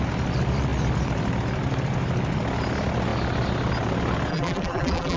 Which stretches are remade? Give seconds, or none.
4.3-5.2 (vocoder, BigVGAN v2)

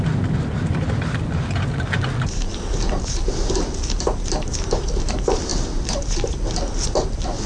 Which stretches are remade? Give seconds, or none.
none

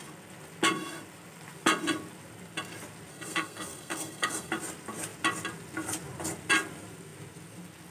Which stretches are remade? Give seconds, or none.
3.1-4.5 (codec, SNAC)

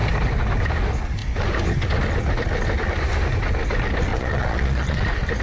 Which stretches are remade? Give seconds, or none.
4.1-5.0 (vocoder, Vocos)

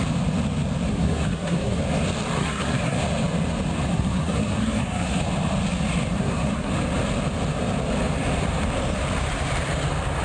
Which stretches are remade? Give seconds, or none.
0.9-1.8 (codec, SNAC); 2.4-3.0; 3.9-5.2; 6.2-6.7

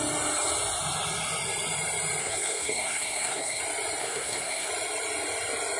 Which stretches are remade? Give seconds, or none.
2.2-3.6 (codec, SNAC); 4.0-4.7

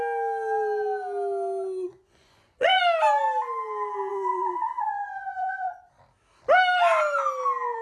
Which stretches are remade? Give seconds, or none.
1.9-2.8 (vocoder, Vocos); 4.1-5.9